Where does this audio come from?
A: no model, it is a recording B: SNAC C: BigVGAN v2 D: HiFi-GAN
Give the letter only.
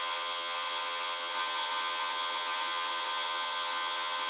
D